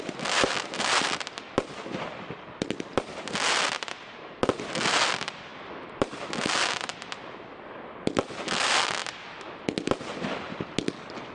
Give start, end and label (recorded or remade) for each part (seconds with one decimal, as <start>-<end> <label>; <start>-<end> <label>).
0.0-11.3 recorded

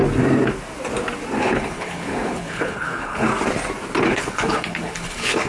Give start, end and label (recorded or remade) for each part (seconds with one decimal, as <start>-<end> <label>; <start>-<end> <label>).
0.0-1.4 recorded; 1.4-3.3 remade; 3.3-4.1 recorded; 4.1-5.5 remade

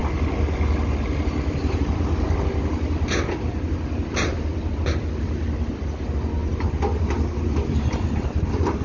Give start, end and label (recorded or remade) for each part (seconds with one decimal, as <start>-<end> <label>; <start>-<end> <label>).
0.0-8.8 recorded

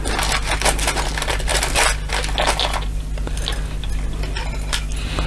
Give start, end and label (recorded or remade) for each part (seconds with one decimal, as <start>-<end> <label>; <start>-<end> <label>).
0.0-5.3 recorded

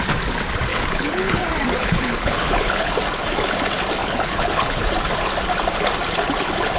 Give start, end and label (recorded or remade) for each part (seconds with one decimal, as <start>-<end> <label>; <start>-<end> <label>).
0.0-0.7 recorded; 0.7-1.4 remade; 1.4-1.8 recorded; 1.8-2.9 remade; 2.9-4.0 recorded; 4.0-4.8 remade; 4.8-6.8 recorded